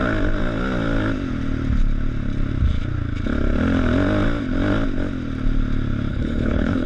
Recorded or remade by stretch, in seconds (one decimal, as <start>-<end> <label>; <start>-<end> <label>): 0.0-6.1 recorded; 6.1-6.9 remade